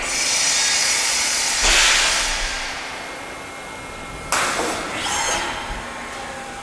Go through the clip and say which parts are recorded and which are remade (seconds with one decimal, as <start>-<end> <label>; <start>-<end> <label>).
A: 0.0-0.8 recorded; 0.8-1.7 remade; 1.7-6.6 recorded